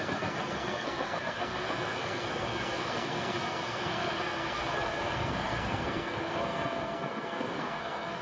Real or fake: fake